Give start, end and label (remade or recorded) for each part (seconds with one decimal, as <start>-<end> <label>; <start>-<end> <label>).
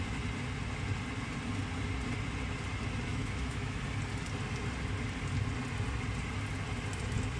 0.0-3.1 recorded; 3.1-3.8 remade; 3.8-7.4 recorded